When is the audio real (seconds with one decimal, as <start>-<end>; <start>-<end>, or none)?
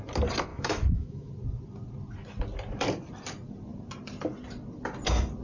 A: 0.0-0.5; 1.3-5.4